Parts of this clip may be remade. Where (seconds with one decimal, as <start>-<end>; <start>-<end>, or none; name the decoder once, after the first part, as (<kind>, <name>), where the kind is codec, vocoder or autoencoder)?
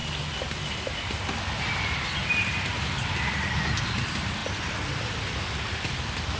none